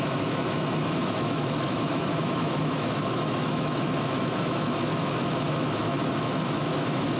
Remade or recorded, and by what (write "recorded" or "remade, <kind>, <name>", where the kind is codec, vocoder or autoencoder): remade, autoencoder, DAC-VAE